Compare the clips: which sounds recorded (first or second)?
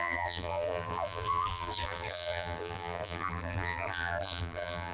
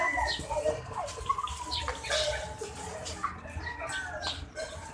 second